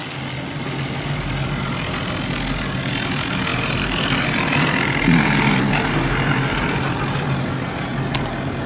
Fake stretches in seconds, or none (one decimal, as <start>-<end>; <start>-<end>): none